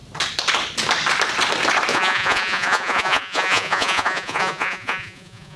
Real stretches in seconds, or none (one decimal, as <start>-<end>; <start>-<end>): 0.0-1.9